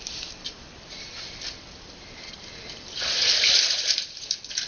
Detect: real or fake real